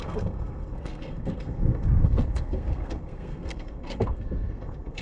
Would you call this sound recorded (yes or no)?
no